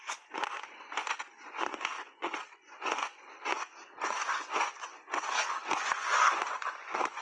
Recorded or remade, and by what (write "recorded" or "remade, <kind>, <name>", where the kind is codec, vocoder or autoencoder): remade, vocoder, Vocos